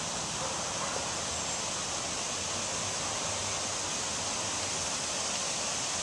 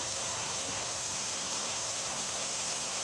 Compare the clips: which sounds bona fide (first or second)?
first